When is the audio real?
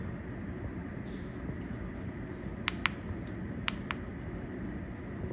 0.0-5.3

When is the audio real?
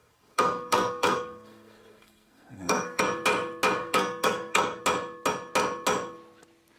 3.0-3.8; 4.8-6.8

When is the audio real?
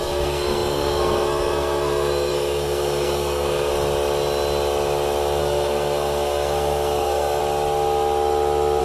3.7-5.4; 7.4-8.8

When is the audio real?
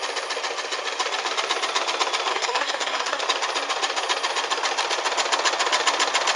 0.0-2.3; 3.2-6.4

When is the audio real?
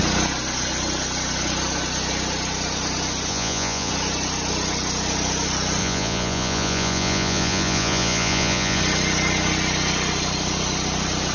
0.0-3.3; 3.9-5.8; 8.8-11.3